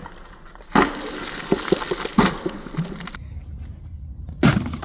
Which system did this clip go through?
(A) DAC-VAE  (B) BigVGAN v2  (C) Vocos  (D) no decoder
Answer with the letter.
D